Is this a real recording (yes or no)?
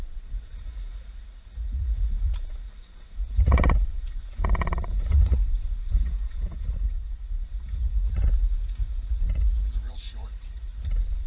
no